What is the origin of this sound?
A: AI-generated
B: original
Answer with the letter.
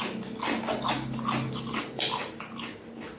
B